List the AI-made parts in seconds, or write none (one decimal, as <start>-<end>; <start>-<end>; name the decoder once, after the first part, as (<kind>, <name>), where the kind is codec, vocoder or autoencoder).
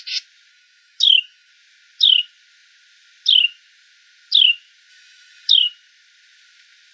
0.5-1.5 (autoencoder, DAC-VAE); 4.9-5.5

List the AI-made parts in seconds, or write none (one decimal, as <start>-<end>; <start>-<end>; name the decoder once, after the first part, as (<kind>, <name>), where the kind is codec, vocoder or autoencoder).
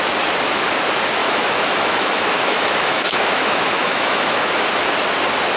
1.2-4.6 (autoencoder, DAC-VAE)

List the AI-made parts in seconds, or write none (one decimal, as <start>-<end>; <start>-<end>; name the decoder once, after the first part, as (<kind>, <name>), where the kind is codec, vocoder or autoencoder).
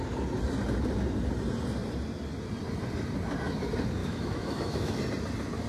4.0-5.0 (autoencoder, DAC-VAE)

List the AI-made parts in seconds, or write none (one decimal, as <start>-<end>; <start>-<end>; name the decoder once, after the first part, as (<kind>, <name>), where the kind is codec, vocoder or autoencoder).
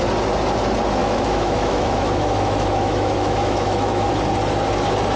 1.0-4.1 (autoencoder, DAC-VAE)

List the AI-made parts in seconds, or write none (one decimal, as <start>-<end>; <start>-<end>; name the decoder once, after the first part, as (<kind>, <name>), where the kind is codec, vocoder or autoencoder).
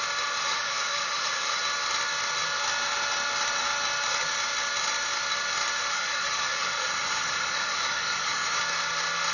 0.4-1.6 (autoencoder, DAC-VAE); 5.9-8.6